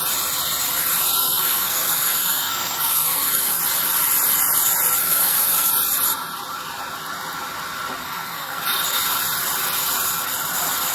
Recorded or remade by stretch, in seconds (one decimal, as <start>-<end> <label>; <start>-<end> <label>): 0.0-1.2 recorded; 1.2-3.6 remade; 3.6-5.0 recorded; 5.0-5.7 remade; 5.7-8.0 recorded; 8.0-8.6 remade; 8.6-10.9 recorded